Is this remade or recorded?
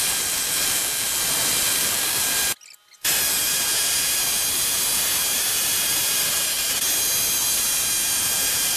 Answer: recorded